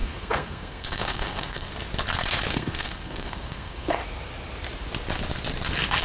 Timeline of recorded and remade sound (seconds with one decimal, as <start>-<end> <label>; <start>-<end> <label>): 0.0-1.7 remade; 1.7-2.5 recorded; 2.5-4.0 remade; 4.0-6.0 recorded